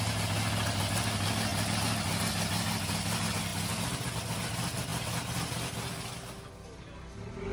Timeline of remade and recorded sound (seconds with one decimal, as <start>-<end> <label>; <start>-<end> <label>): 0.0-7.5 recorded